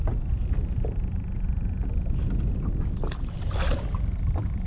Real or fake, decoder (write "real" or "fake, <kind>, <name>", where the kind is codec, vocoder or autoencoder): real